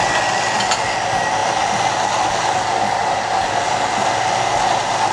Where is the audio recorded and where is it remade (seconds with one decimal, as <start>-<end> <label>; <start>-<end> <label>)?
0.0-5.1 recorded